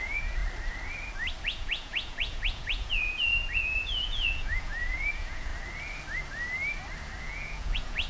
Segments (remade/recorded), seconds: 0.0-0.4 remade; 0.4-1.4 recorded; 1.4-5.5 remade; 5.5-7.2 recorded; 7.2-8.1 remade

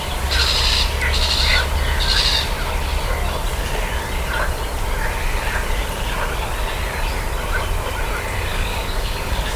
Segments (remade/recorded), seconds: 0.0-8.5 recorded; 8.5-9.6 remade

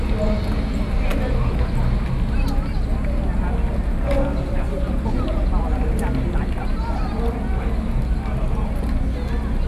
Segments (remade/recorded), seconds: 0.0-9.7 recorded

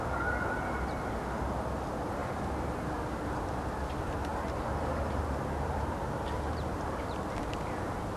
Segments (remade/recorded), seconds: 0.0-4.3 recorded; 4.3-7.2 remade; 7.2-8.2 recorded

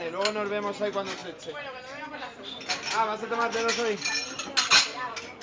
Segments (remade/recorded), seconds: 0.0-5.4 recorded

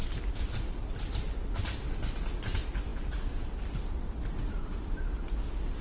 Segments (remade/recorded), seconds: 0.0-5.8 recorded